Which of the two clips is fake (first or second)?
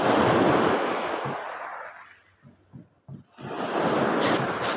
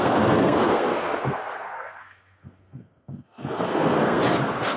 second